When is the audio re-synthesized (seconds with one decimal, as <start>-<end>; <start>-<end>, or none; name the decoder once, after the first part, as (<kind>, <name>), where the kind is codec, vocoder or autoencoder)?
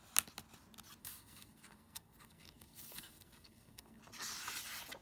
1.0-4.0 (codec, SNAC)